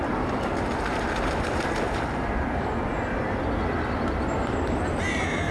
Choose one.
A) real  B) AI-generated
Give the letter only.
A